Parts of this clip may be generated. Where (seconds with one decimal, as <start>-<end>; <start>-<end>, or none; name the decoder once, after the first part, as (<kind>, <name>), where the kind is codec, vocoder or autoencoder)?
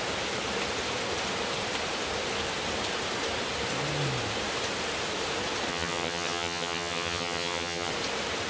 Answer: 5.7-7.9 (vocoder, HiFi-GAN)